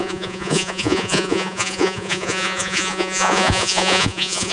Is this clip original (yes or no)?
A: no